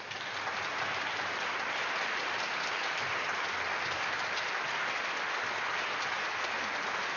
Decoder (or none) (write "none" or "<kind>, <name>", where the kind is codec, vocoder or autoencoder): none